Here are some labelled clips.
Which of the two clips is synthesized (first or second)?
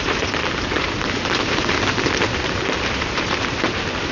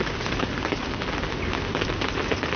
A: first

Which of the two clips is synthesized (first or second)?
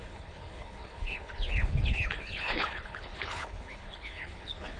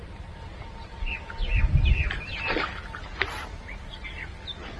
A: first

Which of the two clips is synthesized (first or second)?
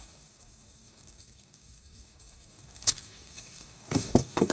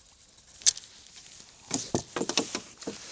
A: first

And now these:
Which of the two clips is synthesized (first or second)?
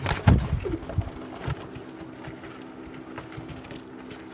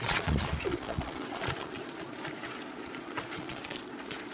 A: second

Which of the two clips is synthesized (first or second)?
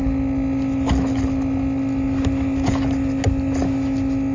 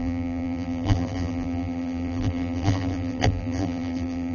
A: second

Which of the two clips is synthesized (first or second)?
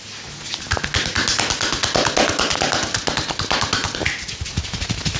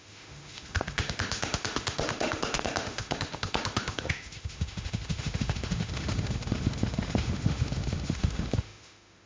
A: second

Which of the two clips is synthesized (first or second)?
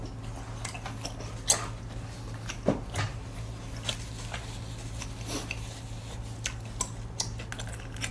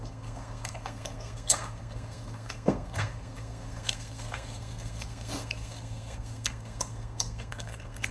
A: second